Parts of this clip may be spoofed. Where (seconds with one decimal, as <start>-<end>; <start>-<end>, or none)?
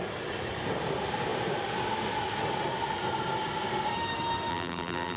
4.5-5.2